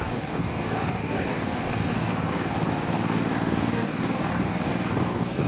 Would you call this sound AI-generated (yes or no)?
yes